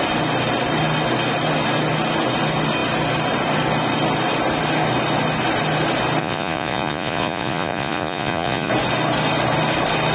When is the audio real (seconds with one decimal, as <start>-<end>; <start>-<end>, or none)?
0.0-6.2; 8.7-10.1